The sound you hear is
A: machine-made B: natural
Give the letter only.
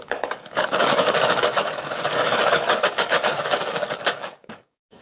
A